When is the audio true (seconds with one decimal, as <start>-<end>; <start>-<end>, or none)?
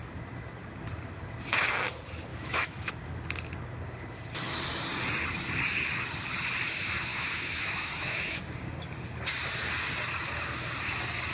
0.0-2.3; 2.9-7.1; 8.4-11.3